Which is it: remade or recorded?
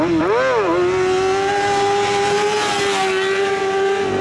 recorded